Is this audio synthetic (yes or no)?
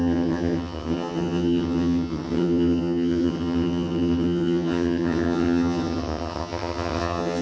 yes